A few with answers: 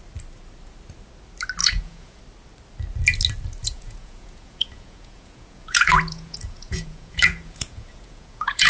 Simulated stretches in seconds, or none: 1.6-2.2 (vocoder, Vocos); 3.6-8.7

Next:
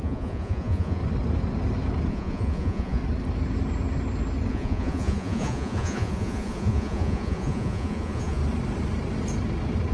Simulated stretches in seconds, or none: 0.0-1.0 (vocoder, Vocos); 2.1-3.0; 4.5-8.4

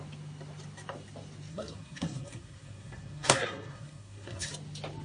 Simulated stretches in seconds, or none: 1.5-4.5 (codec, SNAC)

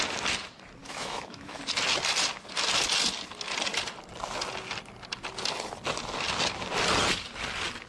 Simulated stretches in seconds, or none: 0.8-1.6 (autoencoder, DAC-VAE)

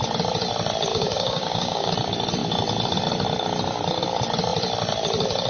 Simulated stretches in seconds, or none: 0.9-1.9 (codec, DAC)